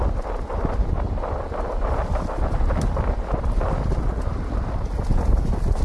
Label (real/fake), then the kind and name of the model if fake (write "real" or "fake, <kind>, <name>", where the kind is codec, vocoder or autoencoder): real